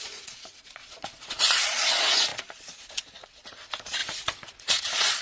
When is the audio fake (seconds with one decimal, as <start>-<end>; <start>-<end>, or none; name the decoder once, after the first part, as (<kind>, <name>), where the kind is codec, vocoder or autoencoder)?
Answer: 0.0-5.2 (vocoder, Vocos)